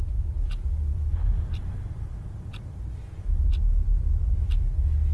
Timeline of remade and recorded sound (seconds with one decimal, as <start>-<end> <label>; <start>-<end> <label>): 0.0-0.9 recorded; 0.9-2.6 remade; 2.6-5.1 recorded